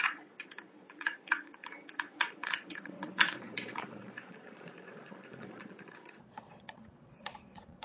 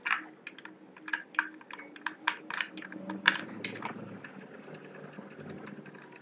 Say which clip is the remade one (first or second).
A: first